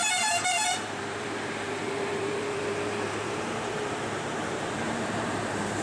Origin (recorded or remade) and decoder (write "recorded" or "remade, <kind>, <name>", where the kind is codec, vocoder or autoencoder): remade, vocoder, BigVGAN v2